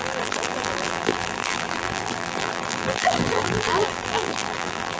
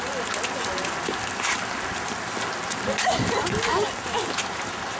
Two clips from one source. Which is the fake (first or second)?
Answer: first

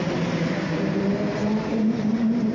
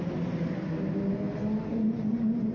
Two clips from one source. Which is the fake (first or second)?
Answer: first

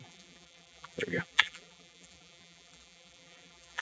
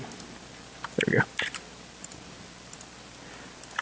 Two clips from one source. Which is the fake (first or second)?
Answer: first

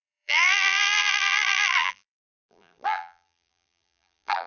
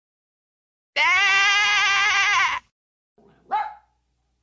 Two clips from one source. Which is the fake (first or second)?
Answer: first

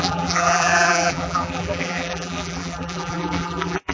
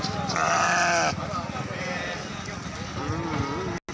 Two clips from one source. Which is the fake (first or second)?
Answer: first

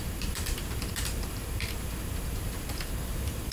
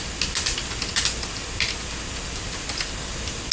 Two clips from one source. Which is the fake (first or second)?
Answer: first